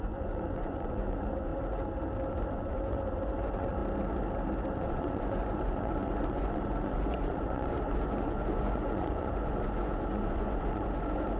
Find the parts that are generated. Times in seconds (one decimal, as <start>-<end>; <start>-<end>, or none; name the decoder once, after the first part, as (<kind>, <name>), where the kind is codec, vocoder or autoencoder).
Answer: 0.0-1.5 (vocoder, Vocos); 2.3-3.8; 4.7-11.4

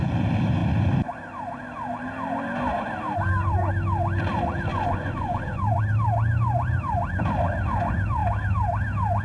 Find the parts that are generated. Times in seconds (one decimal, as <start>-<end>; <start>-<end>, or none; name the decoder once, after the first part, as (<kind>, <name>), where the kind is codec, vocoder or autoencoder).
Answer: 4.7-5.8 (vocoder, Vocos)

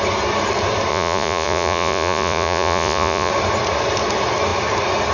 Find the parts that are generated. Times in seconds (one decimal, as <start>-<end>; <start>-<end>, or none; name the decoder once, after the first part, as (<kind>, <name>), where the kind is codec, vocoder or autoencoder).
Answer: 0.9-3.3 (vocoder, Vocos)

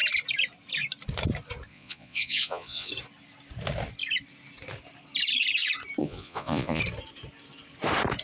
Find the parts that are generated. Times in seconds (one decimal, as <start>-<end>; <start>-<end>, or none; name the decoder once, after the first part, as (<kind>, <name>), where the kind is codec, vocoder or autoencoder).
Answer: 1.7-2.9 (vocoder, Vocos); 6.0-6.8

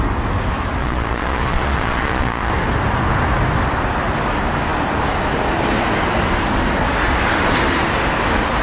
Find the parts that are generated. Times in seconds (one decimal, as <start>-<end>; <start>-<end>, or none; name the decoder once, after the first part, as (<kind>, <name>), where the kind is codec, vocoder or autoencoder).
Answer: 0.8-2.5 (vocoder, Vocos)

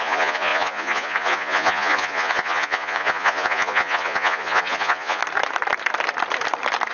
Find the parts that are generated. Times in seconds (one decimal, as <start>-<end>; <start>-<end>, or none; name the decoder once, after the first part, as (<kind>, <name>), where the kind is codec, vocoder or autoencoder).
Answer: 0.0-5.2 (vocoder, Vocos)

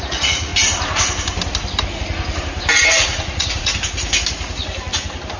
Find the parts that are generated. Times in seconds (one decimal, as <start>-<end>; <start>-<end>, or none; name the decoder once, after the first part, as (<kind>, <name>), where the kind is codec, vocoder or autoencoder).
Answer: 0.0-0.5 (vocoder, Vocos); 2.8-3.7

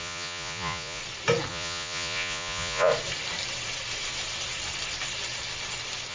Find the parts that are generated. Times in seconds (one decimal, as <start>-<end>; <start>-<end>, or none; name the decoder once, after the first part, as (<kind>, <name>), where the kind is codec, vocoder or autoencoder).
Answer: 0.0-1.0 (vocoder, Vocos); 1.5-2.9